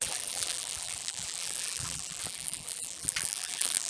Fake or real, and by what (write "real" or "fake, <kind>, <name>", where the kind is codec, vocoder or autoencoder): fake, vocoder, BigVGAN v2